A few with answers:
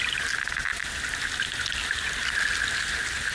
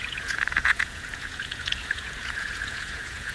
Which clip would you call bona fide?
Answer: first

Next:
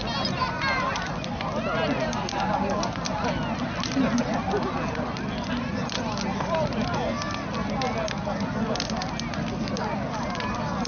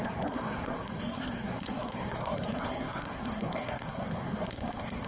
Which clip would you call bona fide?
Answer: first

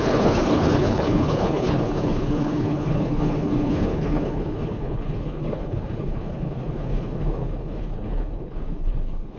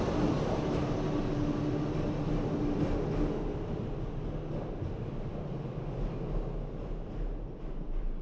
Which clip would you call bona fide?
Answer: second